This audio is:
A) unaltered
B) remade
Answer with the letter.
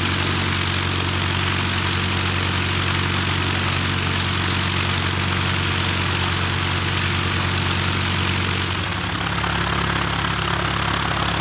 A